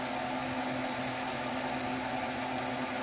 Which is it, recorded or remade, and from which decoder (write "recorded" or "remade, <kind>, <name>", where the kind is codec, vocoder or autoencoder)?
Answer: recorded